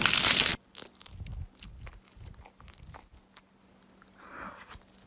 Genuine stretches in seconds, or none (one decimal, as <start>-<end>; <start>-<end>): 0.0-5.1